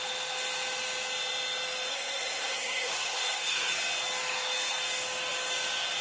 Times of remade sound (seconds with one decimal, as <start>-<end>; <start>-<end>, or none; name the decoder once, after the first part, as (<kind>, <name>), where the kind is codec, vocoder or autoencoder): 1.9-3.7 (codec, SNAC)